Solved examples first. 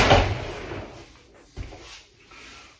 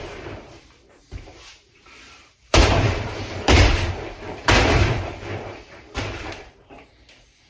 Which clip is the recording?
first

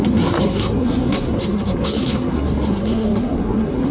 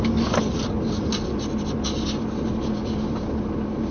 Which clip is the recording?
second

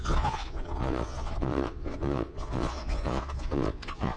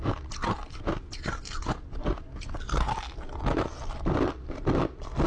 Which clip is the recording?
second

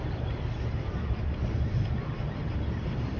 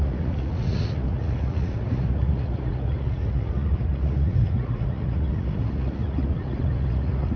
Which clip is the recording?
first